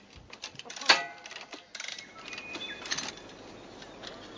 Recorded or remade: recorded